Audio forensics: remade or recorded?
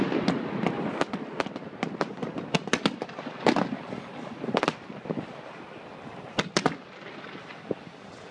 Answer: recorded